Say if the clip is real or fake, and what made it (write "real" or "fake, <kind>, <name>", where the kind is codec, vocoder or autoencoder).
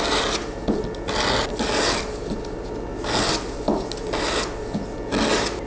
real